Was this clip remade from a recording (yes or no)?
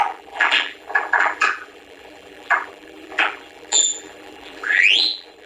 yes